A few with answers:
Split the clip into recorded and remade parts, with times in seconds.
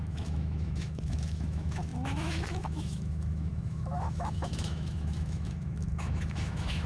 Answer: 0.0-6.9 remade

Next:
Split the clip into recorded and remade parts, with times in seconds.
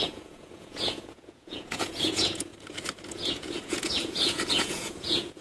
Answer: 0.0-2.5 remade; 2.5-3.1 recorded; 3.1-5.4 remade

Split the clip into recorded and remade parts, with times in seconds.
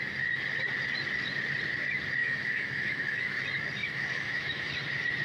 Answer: 0.0-2.2 recorded; 2.2-3.4 remade; 3.4-3.8 recorded; 3.8-4.7 remade; 4.7-5.2 recorded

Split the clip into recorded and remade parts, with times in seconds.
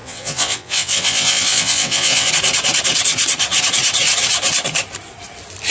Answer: 0.0-2.3 remade; 2.3-5.7 recorded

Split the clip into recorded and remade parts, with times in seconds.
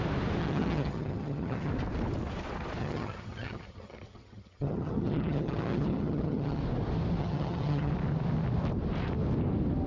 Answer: 0.0-0.4 recorded; 0.4-1.7 remade; 1.7-2.8 recorded; 2.8-6.6 remade; 6.6-7.2 recorded; 7.2-7.9 remade; 7.9-9.9 recorded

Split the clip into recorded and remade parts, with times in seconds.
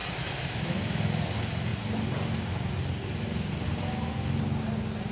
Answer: 0.0-1.7 remade; 1.7-5.1 recorded